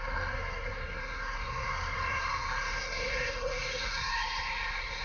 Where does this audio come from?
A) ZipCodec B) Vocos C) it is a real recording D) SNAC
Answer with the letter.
D